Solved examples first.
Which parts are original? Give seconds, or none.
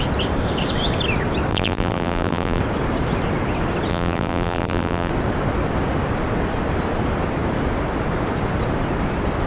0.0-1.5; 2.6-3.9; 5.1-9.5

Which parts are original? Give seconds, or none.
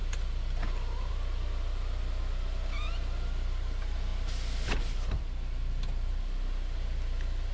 1.1-7.5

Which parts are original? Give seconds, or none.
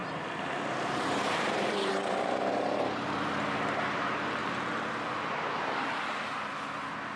3.3-4.4; 5.0-7.2